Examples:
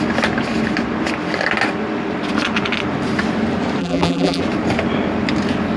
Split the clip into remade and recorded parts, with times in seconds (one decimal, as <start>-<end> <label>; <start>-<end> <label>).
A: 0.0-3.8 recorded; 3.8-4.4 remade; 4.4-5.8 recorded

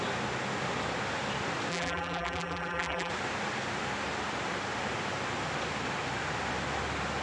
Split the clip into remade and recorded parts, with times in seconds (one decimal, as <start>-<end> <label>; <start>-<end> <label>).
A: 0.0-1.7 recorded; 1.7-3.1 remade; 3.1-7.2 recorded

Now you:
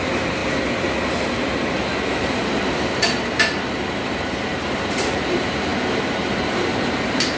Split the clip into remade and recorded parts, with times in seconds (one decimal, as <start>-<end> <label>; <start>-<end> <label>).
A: 0.0-0.4 remade; 0.4-2.6 recorded; 2.6-7.4 remade

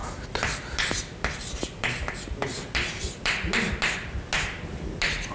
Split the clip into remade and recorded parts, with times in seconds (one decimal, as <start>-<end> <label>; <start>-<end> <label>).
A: 0.0-5.3 recorded

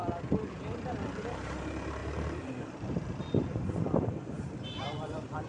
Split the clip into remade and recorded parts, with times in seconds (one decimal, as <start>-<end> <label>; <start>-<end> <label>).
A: 0.0-0.5 recorded; 0.5-5.5 remade

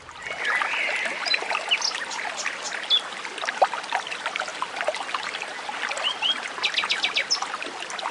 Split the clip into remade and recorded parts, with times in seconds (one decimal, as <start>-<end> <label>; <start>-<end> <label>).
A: 0.0-8.1 recorded